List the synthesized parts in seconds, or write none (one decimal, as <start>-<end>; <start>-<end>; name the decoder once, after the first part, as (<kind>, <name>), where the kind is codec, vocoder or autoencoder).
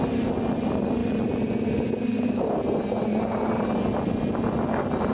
1.0-4.1 (vocoder, BigVGAN v2)